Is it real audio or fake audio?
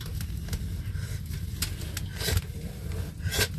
real